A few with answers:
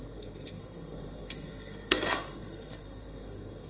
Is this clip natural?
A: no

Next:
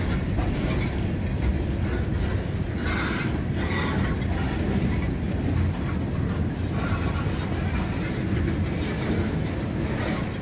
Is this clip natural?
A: yes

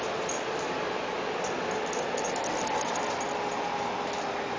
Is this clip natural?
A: yes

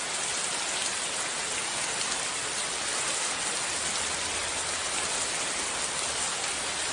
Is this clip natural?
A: yes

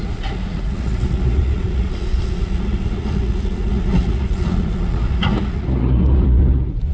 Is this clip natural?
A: no